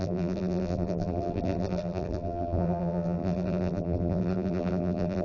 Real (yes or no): no